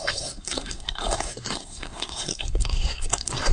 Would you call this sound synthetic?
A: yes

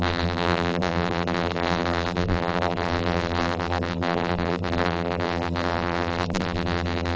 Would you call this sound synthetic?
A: yes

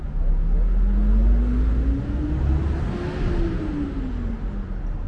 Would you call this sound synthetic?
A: no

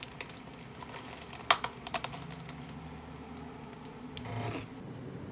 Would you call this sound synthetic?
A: no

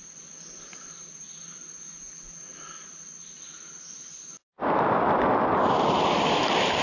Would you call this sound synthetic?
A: no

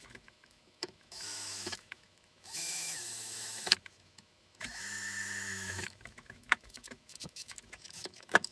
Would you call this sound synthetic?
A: yes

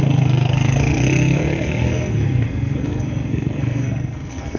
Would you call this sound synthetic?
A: yes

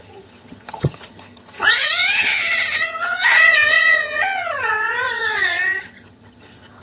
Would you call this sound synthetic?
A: yes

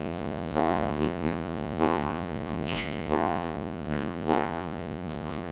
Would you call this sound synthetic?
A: yes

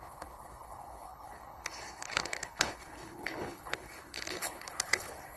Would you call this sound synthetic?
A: yes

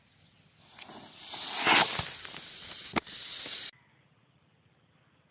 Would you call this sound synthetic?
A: no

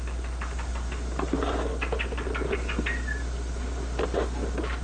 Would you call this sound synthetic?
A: no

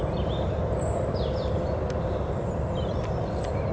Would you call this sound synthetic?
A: no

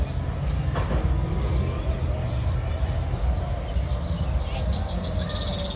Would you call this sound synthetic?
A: no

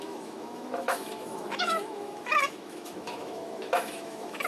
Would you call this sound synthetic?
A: yes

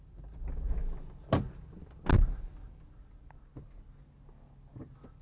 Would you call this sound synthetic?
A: no